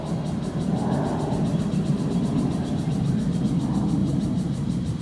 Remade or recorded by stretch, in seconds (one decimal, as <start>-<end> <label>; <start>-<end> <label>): 0.0-1.1 recorded; 1.1-3.4 remade; 3.4-4.0 recorded; 4.0-5.0 remade